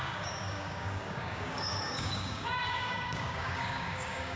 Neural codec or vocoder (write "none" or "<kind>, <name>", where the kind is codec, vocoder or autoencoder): codec, DAC